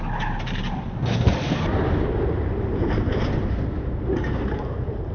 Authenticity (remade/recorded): recorded